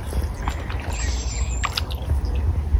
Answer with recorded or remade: recorded